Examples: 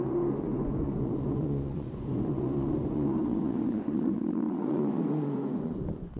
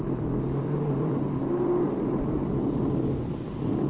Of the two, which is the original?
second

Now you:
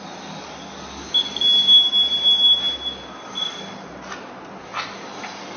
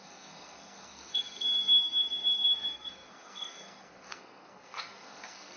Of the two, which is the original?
first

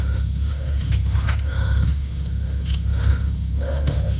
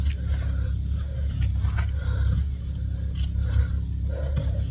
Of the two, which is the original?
second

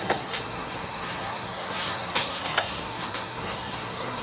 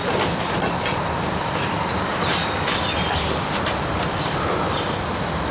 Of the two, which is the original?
second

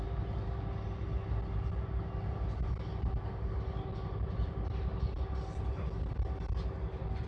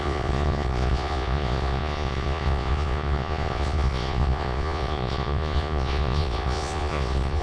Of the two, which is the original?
first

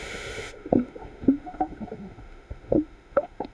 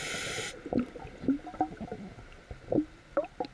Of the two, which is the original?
second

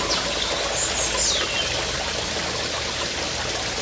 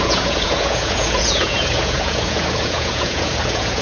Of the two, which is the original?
first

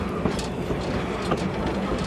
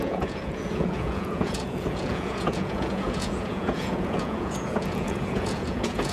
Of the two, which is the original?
first